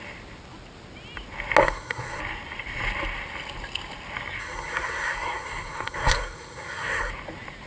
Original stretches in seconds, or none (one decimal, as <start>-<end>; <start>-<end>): 0.0-1.6; 2.2-4.4; 7.1-7.7